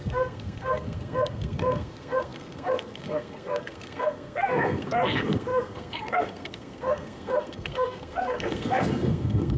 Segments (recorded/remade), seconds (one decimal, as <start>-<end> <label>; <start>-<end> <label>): 0.0-9.6 remade